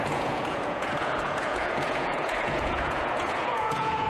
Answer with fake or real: fake